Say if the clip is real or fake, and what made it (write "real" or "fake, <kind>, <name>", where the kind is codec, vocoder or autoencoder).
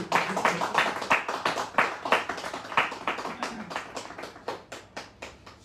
real